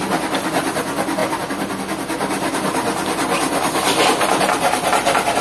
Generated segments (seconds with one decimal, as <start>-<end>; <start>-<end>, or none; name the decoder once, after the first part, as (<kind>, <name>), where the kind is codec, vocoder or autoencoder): none